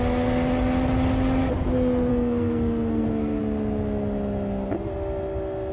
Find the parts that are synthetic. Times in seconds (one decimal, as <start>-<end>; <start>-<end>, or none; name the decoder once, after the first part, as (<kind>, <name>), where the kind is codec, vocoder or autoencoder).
2.1-3.4 (codec, SNAC)